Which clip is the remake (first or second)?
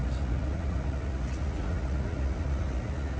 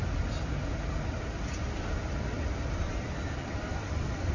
first